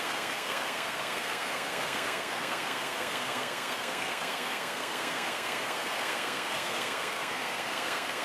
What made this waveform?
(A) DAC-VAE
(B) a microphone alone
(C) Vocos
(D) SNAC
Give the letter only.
D